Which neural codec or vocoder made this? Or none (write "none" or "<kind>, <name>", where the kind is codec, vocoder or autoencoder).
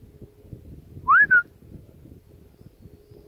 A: none